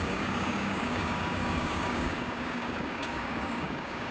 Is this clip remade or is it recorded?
remade